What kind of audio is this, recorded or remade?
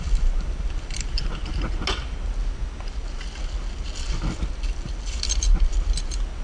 recorded